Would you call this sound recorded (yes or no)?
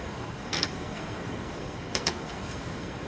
no